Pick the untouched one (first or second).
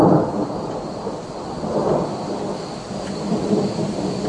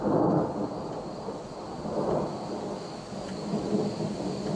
second